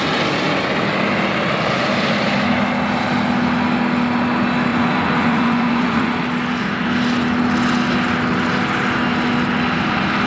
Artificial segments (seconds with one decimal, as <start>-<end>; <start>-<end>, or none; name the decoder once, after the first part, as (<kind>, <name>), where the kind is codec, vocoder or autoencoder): 4.7-6.1 (vocoder, Vocos)